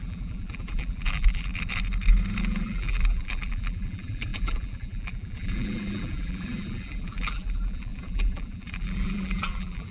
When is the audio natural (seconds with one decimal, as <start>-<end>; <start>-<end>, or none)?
1.5-2.4